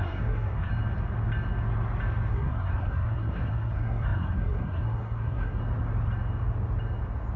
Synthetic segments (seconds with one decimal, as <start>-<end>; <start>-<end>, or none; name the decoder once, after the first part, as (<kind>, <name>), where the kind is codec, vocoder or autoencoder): 0.0-0.7 (codec, SNAC); 2.3-5.6